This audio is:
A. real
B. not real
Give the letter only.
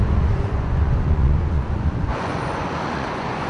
B